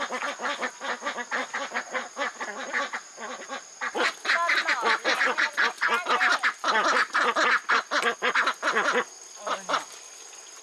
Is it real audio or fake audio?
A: real